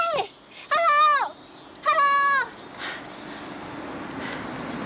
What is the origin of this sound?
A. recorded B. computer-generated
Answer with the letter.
A